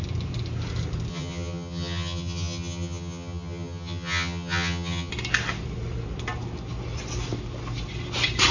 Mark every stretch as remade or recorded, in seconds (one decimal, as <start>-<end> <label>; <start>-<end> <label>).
0.0-1.1 recorded; 1.1-5.1 remade; 5.1-8.5 recorded